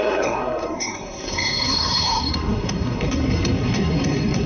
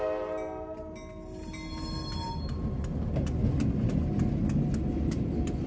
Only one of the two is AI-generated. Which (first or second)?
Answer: first